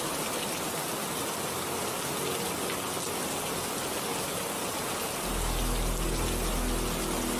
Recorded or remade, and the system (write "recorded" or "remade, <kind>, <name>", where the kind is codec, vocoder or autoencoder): recorded